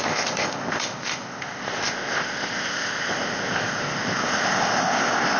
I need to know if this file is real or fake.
fake